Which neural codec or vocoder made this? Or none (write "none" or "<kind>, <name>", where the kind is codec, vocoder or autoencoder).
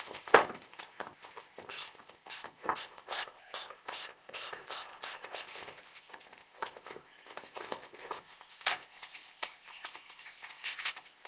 codec, ZipCodec